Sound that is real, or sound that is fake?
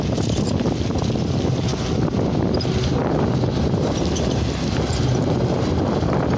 real